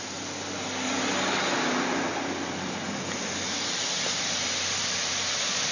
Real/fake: real